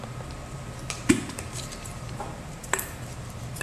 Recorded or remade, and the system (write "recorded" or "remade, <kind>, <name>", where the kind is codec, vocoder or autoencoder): remade, vocoder, BigVGAN v2